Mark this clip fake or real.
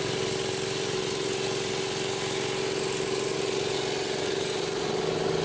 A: real